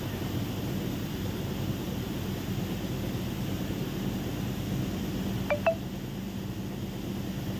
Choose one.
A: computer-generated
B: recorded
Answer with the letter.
B